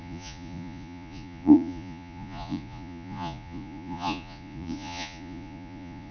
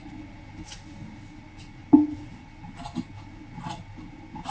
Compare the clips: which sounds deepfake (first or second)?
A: first